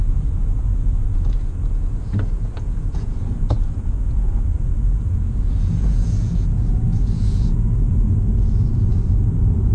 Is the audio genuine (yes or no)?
no